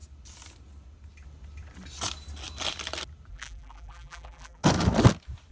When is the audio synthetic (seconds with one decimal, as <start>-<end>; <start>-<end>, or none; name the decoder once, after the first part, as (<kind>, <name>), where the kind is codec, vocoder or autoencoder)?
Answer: 3.3-4.6 (vocoder, BigVGAN v2)